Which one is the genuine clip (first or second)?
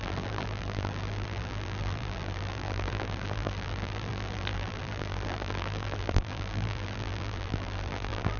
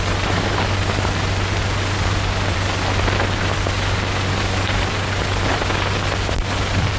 second